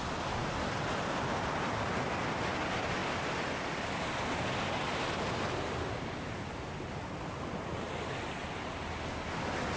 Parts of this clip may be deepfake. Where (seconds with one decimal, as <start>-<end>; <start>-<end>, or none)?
none